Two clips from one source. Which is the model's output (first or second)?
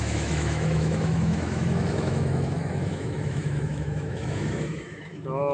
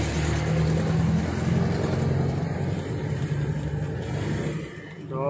first